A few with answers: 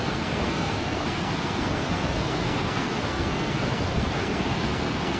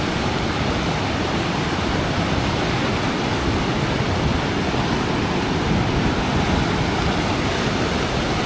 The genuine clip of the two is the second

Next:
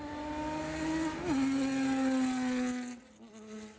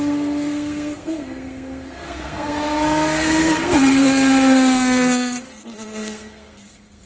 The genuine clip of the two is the first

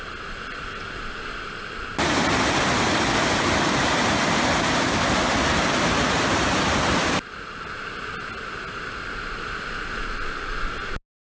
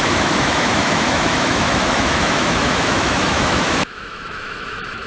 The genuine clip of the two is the first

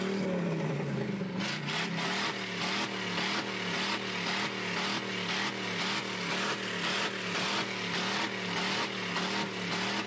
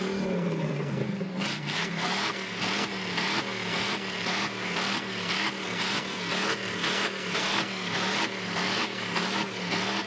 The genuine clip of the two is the first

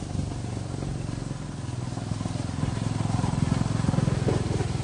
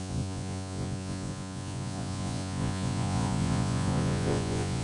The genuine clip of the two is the first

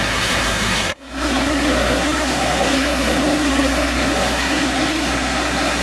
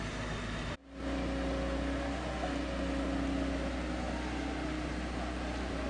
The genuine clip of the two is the second